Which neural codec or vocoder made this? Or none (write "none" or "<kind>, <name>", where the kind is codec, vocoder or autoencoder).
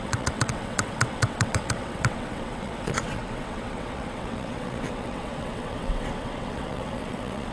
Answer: vocoder, WaveNeXt